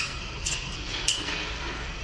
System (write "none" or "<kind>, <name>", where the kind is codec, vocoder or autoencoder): codec, SNAC